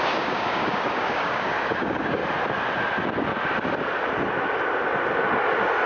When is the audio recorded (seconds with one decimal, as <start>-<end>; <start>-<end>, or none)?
2.2-5.9